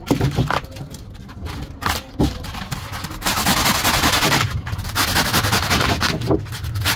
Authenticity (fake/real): real